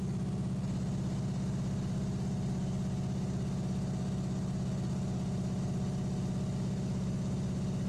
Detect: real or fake real